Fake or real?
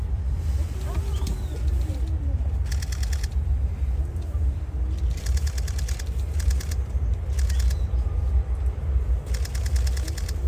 real